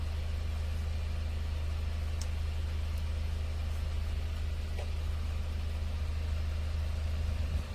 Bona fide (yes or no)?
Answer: yes